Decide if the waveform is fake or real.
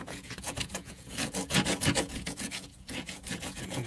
fake